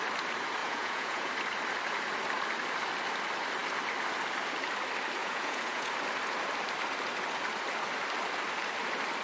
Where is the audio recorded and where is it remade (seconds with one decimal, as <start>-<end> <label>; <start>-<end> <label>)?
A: 0.0-0.6 recorded; 0.6-1.3 remade; 1.3-5.2 recorded; 5.2-5.9 remade; 5.9-9.2 recorded